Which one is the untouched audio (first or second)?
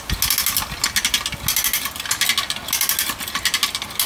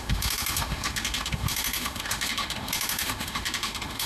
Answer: first